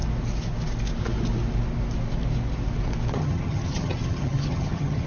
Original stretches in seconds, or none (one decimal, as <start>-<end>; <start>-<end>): 0.0-3.1

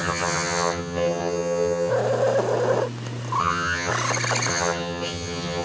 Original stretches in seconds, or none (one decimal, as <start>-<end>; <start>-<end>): 1.9-3.4; 3.9-4.5

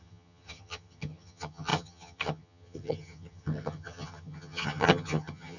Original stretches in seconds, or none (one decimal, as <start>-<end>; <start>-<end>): none

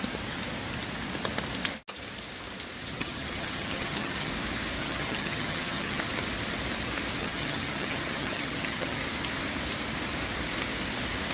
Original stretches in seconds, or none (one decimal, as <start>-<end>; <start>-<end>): 0.0-2.8; 4.3-4.8; 6.0-7.2; 9.0-11.3

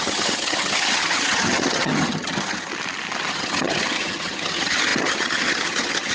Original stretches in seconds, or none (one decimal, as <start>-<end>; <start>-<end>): 2.7-3.3

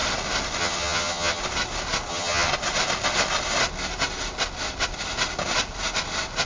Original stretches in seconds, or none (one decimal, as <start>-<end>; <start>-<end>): 0.0-0.6; 1.4-2.1; 2.5-6.5